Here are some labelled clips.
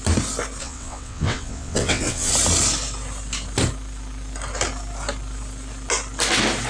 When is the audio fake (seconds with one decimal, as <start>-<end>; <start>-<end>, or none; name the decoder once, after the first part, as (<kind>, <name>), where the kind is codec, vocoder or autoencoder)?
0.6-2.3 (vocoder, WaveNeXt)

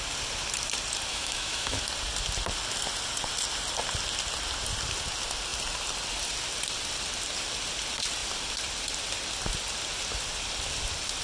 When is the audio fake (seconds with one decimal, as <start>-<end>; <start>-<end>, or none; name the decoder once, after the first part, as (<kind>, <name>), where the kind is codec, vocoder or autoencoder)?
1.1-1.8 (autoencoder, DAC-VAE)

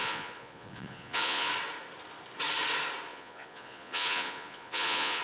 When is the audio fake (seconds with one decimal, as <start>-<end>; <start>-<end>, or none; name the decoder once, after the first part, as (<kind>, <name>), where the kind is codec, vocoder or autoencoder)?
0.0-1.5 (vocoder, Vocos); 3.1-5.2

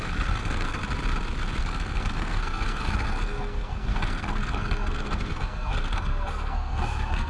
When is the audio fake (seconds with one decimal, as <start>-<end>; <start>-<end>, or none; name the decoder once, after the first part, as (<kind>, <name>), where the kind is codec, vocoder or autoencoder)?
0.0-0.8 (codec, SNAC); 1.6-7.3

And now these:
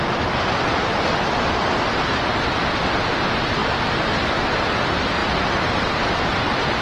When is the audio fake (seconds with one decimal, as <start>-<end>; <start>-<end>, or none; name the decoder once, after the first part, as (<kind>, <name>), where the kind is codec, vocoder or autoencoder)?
none

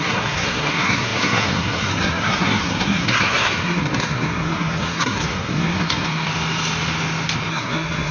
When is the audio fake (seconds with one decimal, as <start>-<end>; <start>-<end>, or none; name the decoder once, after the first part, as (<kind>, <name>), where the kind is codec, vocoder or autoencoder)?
0.0-6.3 (codec, SNAC); 7.5-8.1

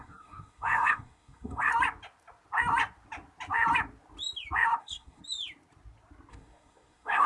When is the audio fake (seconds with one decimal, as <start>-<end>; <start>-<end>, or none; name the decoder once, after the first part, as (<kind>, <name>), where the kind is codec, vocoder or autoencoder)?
0.0-1.7 (codec, SNAC); 4.8-5.2; 6.3-7.3

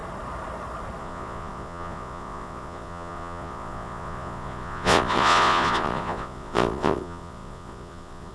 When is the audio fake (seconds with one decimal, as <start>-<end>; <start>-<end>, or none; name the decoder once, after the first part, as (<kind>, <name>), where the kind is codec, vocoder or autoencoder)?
1.0-8.3 (vocoder, Vocos)